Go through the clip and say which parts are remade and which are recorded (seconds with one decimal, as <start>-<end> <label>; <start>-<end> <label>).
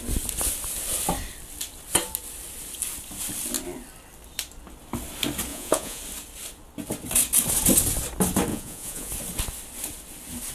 0.0-5.5 recorded; 5.5-6.0 remade; 6.0-8.5 recorded; 8.5-9.1 remade; 9.1-10.5 recorded